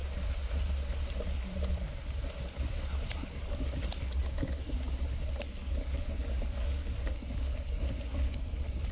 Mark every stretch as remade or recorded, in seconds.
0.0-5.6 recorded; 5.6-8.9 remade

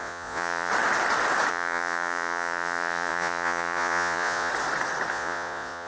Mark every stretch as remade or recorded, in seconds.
0.0-0.7 remade; 0.7-1.5 recorded; 1.5-4.5 remade; 4.5-5.1 recorded; 5.1-5.9 remade

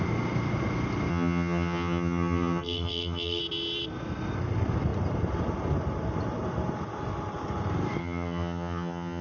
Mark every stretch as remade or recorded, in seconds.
0.0-1.1 recorded; 1.1-3.4 remade; 3.4-8.0 recorded; 8.0-9.2 remade

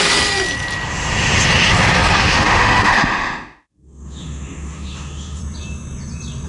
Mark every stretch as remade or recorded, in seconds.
0.0-2.2 recorded; 2.2-5.4 remade; 5.4-6.5 recorded